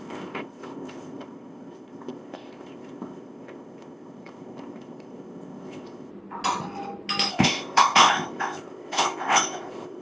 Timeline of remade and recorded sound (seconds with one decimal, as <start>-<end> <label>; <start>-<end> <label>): 0.0-6.1 remade; 6.1-7.3 recorded; 7.3-10.0 remade